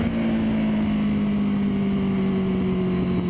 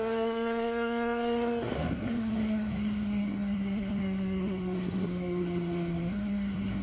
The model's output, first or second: second